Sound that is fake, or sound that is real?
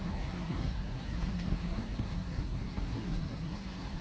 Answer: fake